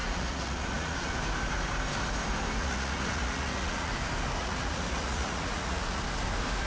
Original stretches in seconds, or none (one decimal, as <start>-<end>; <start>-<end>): 1.1-2.6; 3.9-4.4; 6.0-6.7